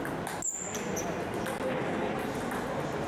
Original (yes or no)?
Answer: yes